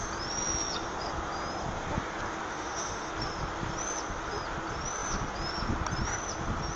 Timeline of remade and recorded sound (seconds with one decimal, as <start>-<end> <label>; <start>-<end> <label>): 0.0-2.5 recorded; 2.5-3.1 remade; 3.1-6.8 recorded